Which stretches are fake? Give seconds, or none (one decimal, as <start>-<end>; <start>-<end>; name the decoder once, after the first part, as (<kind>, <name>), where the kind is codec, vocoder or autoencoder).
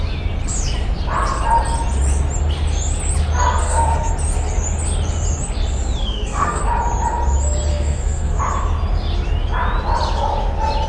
3.6-4.1 (codec, SNAC); 6.0-6.6; 7.7-8.4